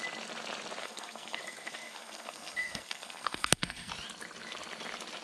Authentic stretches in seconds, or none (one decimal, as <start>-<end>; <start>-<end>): 0.0-0.8; 3.9-5.2